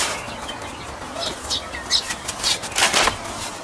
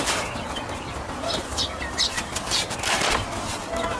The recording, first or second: first